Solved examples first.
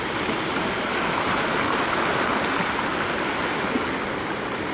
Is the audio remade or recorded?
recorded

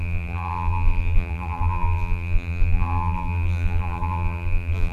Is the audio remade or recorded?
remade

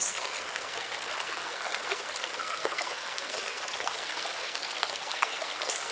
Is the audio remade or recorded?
remade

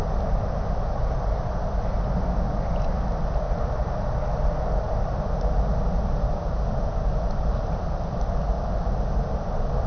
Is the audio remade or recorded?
recorded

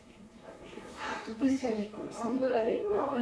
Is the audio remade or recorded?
remade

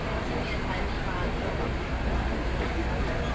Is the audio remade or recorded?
recorded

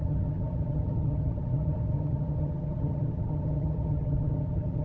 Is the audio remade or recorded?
remade